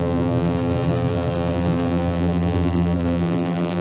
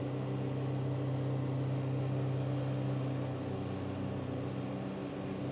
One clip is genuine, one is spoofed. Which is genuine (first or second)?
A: second